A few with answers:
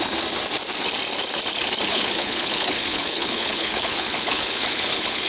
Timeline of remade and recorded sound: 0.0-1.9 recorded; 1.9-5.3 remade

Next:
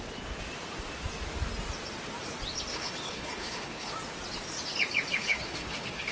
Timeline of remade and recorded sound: 0.0-2.7 recorded; 2.7-3.9 remade; 3.9-5.1 recorded; 5.1-6.1 remade

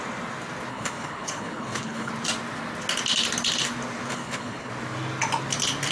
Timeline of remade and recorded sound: 0.0-0.7 recorded; 0.7-2.1 remade; 2.1-4.1 recorded; 4.1-4.7 remade; 4.7-5.9 recorded

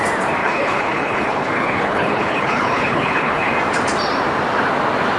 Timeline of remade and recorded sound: 0.0-0.4 recorded; 0.4-3.5 remade; 3.5-5.2 recorded

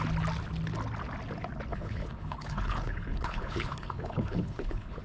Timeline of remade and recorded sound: 0.0-1.7 recorded; 1.7-5.0 remade

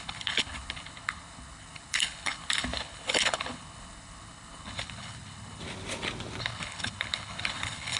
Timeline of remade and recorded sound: 0.0-5.6 remade; 5.6-6.4 recorded; 6.4-8.0 remade